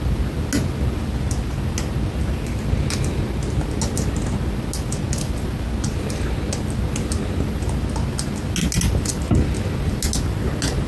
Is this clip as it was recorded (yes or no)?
yes